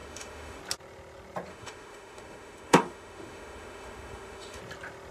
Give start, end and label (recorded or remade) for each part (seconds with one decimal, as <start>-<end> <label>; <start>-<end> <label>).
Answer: 0.0-0.6 remade; 0.6-1.5 recorded; 1.5-4.6 remade; 4.6-5.1 recorded